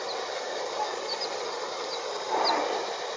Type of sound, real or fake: real